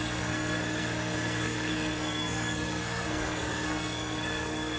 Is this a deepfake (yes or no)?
yes